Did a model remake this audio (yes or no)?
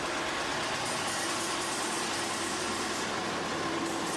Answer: no